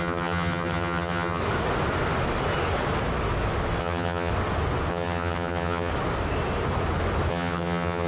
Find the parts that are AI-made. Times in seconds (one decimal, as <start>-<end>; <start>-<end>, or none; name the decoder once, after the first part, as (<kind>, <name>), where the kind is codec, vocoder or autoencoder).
0.0-1.4 (vocoder, HiFi-GAN); 3.8-4.3; 4.9-5.9; 7.3-8.1